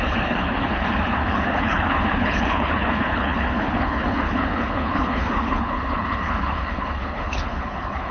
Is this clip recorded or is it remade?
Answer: remade